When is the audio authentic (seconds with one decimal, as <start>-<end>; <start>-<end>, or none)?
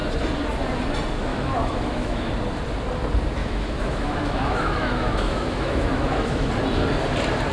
0.0-1.3; 2.3-3.4; 6.5-7.5